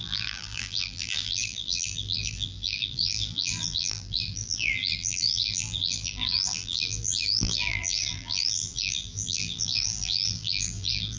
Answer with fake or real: fake